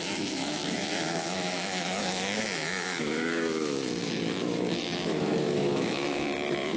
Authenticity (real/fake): fake